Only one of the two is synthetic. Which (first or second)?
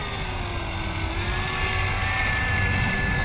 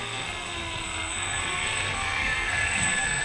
second